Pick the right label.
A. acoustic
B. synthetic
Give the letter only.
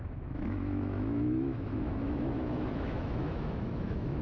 B